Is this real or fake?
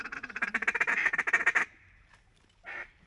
fake